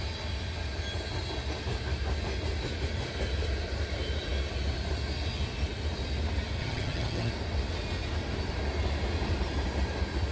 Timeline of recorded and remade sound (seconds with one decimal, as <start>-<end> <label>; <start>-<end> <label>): 0.0-6.6 recorded; 6.6-7.3 remade; 7.3-10.3 recorded